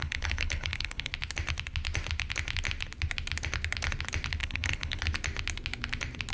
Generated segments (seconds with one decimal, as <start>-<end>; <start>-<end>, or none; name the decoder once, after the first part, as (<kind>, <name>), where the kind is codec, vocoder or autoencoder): 0.0-1.1 (codec, HILCodec); 4.4-5.0